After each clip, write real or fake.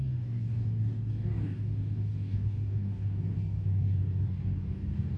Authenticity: fake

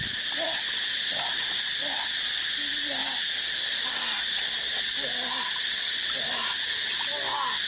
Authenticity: real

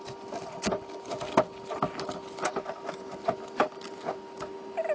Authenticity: real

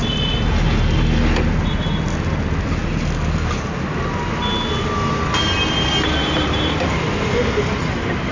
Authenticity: real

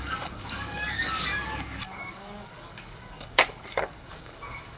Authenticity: fake